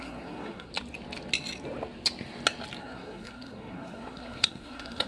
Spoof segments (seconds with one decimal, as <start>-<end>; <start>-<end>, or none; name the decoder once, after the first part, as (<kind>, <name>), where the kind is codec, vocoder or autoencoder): 0.0-0.7 (codec, SNAC); 2.8-5.1